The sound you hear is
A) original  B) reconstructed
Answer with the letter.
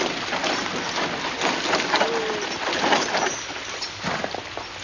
A